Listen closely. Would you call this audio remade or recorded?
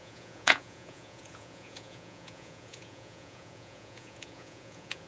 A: remade